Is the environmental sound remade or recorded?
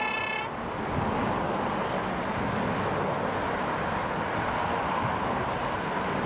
recorded